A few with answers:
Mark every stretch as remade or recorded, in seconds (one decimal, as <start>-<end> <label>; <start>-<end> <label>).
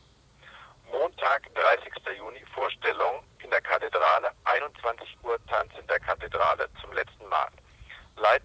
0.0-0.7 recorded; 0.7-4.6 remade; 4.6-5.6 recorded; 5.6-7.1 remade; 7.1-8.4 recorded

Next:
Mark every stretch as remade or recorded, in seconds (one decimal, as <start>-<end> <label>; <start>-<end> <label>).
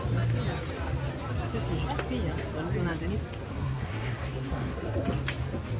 0.0-3.5 recorded; 3.5-5.0 remade; 5.0-5.8 recorded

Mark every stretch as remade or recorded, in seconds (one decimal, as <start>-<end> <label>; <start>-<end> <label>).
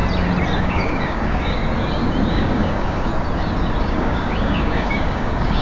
0.0-0.6 recorded; 0.6-1.6 remade; 1.6-2.3 recorded; 2.3-3.1 remade; 3.1-3.8 recorded; 3.8-5.6 remade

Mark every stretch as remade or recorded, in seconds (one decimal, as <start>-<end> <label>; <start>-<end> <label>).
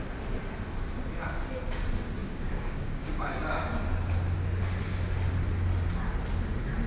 0.0-2.2 recorded; 2.2-3.5 remade; 3.5-6.9 recorded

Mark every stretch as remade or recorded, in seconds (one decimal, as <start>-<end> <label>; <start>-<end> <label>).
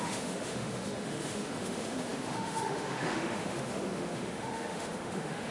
0.0-5.5 remade